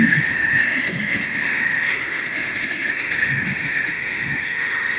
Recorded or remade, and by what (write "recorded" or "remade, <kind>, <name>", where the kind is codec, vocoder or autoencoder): remade, autoencoder, DAC-VAE